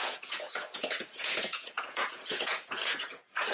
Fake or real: fake